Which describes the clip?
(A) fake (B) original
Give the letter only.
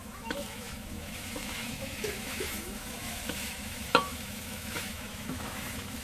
A